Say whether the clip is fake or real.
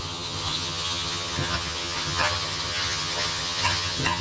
fake